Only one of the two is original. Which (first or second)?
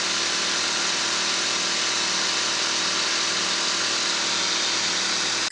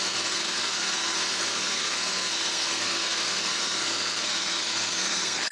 first